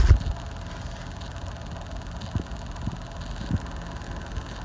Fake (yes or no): no